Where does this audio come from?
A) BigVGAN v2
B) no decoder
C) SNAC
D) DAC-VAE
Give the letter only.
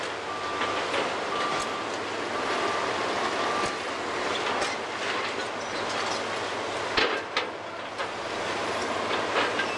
B